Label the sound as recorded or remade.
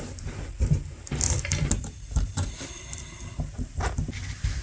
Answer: recorded